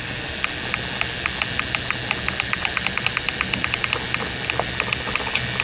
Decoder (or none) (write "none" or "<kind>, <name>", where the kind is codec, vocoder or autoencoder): none